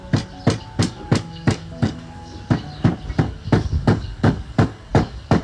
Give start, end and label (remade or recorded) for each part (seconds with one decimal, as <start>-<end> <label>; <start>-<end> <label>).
0.0-0.8 recorded; 0.8-2.3 remade; 2.3-3.2 recorded; 3.2-5.4 remade